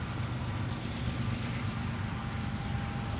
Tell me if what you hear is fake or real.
real